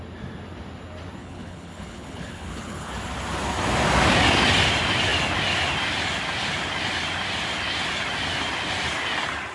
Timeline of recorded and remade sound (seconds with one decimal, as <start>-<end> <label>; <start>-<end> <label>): 0.0-1.2 recorded; 1.2-2.9 remade; 2.9-9.5 recorded

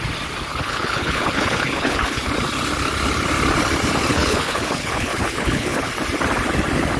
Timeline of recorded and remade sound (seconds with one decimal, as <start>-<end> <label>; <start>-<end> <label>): 0.0-0.5 recorded; 0.5-2.3 remade; 2.3-4.1 recorded; 4.1-5.9 remade; 5.9-7.0 recorded

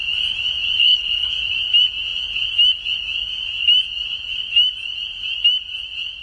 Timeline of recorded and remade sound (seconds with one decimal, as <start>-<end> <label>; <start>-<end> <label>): 0.0-0.8 recorded; 0.8-1.3 remade; 1.3-6.2 recorded

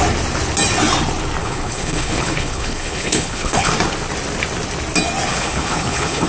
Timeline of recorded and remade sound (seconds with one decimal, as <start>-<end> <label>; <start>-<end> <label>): 0.0-1.4 recorded; 1.4-3.7 remade; 3.7-5.3 recorded; 5.3-6.3 remade

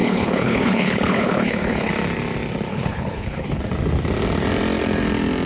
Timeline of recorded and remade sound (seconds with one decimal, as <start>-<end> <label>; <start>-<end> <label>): 0.0-1.9 remade; 1.9-2.7 recorded; 2.7-3.6 remade; 3.6-5.5 recorded